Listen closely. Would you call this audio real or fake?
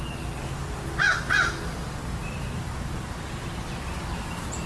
real